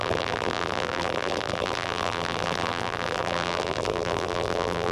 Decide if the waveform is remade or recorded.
remade